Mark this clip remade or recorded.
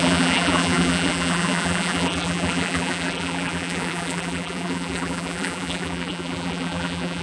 remade